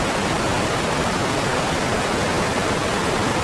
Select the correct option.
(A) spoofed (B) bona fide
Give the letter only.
B